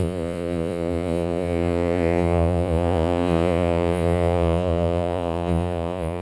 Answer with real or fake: fake